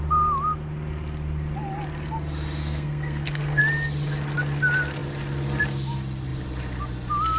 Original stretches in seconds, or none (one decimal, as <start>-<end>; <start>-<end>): 0.0-2.6; 3.6-7.4